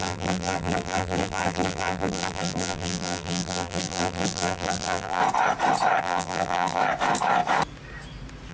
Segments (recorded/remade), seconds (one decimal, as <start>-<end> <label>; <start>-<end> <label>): 0.0-5.2 remade; 5.2-6.0 recorded; 6.0-6.8 remade; 6.8-8.5 recorded